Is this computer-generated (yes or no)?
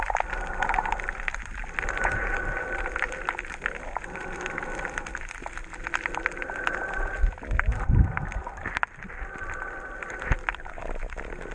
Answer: no